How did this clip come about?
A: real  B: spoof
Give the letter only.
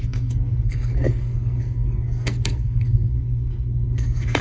B